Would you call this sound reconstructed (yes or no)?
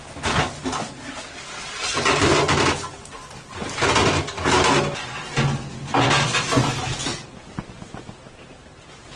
no